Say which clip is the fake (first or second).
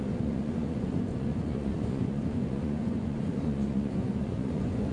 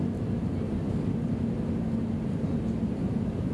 first